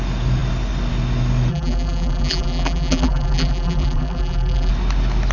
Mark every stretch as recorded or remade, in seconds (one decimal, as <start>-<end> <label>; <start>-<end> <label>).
0.0-1.5 recorded; 1.5-4.7 remade; 4.7-5.3 recorded